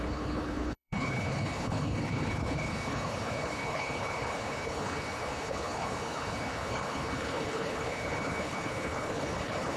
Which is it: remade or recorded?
remade